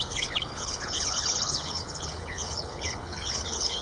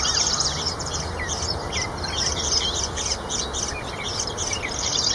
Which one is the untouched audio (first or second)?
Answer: second